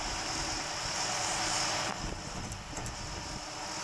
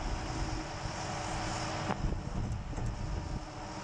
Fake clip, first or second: first